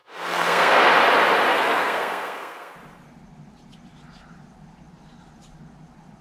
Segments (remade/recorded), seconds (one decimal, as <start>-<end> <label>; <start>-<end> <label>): 0.0-0.8 remade; 0.8-1.5 recorded; 1.5-2.7 remade; 2.7-6.2 recorded